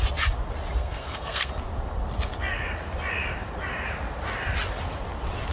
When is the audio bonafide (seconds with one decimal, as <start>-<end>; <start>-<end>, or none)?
0.0-0.8; 1.5-5.5